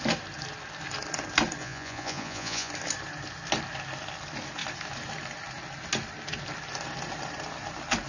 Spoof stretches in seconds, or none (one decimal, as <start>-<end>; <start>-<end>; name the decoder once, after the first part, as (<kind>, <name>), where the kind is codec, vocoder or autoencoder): 1.6-2.7 (vocoder, Vocos)